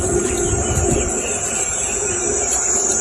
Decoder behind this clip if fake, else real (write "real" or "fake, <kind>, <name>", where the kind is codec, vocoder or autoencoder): fake, vocoder, BigVGAN v2